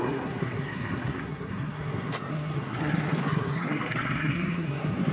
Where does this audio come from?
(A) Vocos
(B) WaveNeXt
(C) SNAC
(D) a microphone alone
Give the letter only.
C